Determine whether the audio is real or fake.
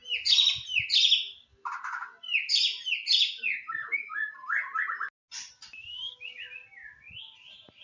real